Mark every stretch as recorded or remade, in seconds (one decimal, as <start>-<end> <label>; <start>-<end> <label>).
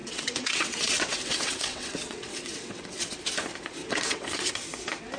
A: 0.0-3.0 remade; 3.0-3.8 recorded; 3.8-4.5 remade; 4.5-5.2 recorded